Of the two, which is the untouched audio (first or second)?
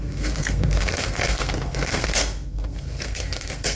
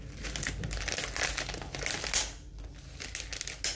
second